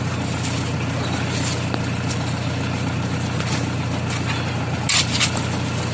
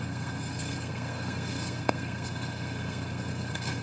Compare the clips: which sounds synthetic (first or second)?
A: second